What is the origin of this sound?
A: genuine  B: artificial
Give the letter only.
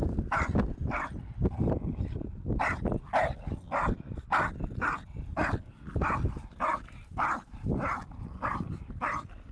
A